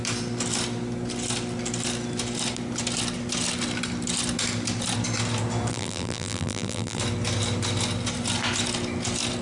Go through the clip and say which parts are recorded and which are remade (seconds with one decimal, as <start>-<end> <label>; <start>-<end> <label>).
0.0-5.7 recorded; 5.7-7.0 remade; 7.0-9.4 recorded